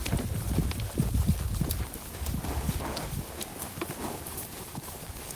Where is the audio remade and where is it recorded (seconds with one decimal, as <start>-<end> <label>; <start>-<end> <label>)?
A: 0.0-2.1 recorded; 2.1-5.4 remade